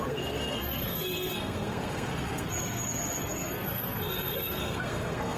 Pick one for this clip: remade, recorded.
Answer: remade